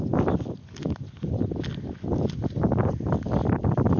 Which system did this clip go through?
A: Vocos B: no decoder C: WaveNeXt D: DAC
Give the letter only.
B